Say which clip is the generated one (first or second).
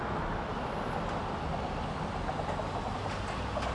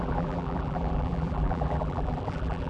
second